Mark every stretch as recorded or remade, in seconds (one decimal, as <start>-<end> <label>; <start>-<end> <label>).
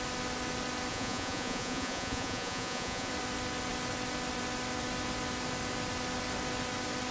0.0-0.9 recorded; 0.9-3.1 remade; 3.1-7.1 recorded